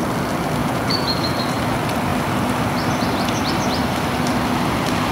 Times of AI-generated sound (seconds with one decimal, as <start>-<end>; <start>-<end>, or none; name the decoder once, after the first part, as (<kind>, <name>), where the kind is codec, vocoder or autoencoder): 0.6-1.4 (vocoder, Vocos)

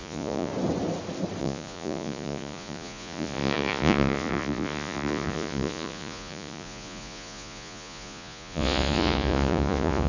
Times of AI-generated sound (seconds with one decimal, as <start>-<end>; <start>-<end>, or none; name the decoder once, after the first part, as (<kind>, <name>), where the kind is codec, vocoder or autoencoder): 0.0-0.5 (vocoder, Vocos); 1.4-10.1